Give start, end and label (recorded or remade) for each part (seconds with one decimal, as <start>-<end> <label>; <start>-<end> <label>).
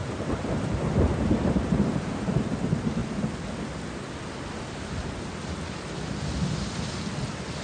0.0-3.0 remade; 3.0-7.6 recorded